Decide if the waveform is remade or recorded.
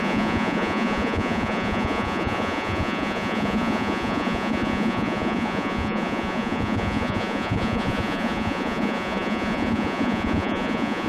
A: remade